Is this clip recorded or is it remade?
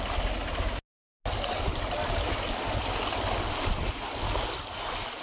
recorded